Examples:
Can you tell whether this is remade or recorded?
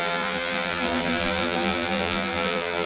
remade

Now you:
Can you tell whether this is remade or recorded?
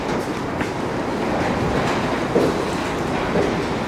recorded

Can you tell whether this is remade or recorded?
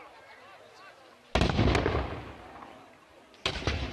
recorded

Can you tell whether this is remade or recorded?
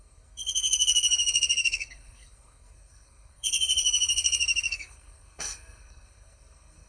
remade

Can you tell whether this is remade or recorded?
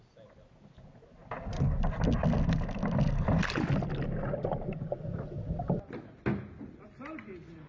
recorded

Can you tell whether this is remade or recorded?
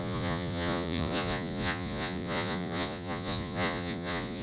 remade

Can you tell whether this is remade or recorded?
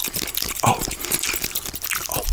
recorded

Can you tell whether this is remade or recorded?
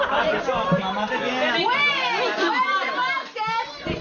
recorded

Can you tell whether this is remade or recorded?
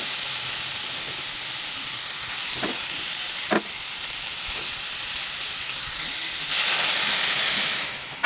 recorded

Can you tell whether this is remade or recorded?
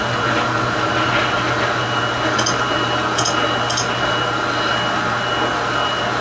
recorded